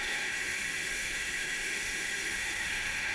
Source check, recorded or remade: remade